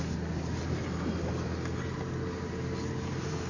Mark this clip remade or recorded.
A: recorded